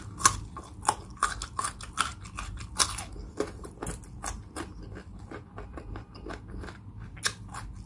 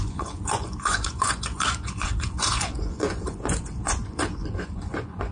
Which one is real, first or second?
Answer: first